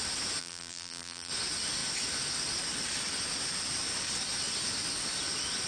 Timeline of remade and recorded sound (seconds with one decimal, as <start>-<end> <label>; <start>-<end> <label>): 0.0-0.4 recorded; 0.4-1.3 remade; 1.3-5.7 recorded